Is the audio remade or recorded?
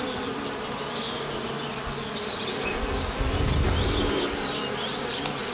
recorded